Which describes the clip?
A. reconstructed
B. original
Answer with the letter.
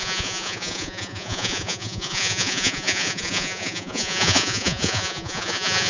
A